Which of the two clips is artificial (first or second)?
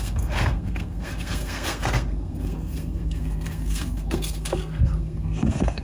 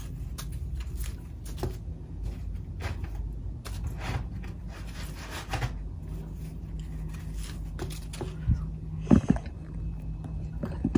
first